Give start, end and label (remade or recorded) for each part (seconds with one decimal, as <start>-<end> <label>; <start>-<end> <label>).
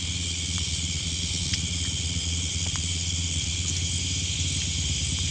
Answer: 0.0-3.7 remade; 3.7-5.3 recorded